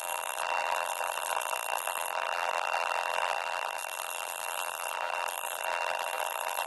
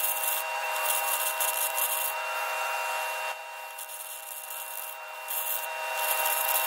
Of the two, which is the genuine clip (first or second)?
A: second